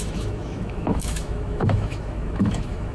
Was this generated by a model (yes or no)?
yes